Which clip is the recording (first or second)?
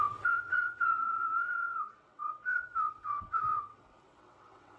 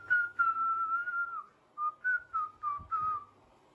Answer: second